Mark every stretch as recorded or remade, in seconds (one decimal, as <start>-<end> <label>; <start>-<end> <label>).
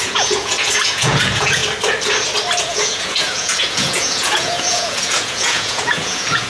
0.0-1.6 remade; 1.6-2.6 recorded; 2.6-6.5 remade